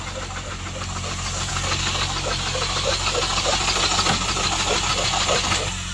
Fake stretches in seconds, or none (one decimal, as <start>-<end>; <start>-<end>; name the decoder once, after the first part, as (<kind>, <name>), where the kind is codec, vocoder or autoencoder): none